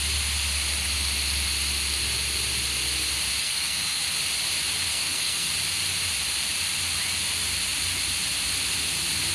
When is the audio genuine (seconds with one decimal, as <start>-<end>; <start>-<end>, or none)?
0.0-3.4; 4.0-4.9; 5.5-9.3